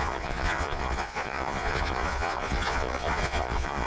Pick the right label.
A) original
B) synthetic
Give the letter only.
B